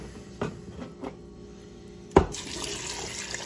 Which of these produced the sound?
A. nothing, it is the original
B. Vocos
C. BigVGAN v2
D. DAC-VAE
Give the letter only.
A